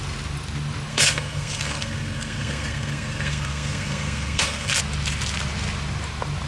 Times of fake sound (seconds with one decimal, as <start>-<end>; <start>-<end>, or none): 0.9-4.8